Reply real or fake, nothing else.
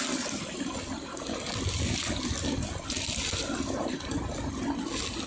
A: real